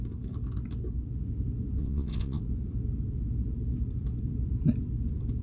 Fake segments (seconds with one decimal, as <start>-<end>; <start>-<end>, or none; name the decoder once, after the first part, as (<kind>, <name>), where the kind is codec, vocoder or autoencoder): 1.8-2.4 (vocoder, WaveNeXt)